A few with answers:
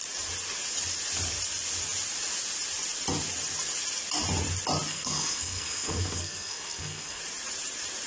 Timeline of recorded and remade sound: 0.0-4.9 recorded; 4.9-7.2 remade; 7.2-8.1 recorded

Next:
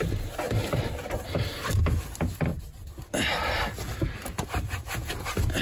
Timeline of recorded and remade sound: 0.0-5.6 recorded

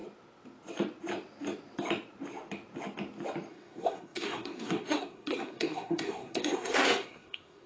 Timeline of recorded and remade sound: 0.0-3.5 recorded; 3.5-7.7 remade

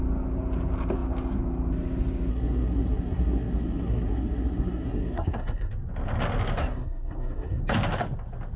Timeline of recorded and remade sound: 0.0-2.3 recorded; 2.3-5.7 remade; 5.7-6.6 recorded; 6.6-7.6 remade; 7.6-8.6 recorded

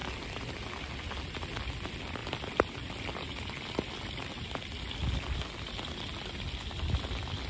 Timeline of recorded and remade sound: 0.0-7.5 recorded